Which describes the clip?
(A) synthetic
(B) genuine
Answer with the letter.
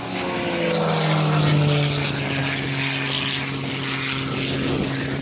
B